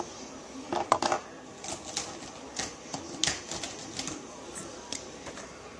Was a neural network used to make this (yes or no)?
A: no